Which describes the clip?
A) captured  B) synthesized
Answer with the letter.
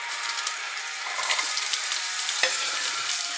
B